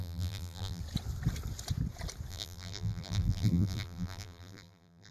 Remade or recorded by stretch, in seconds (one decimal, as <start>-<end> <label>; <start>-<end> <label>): 0.0-0.8 remade; 0.8-2.3 recorded; 2.3-5.1 remade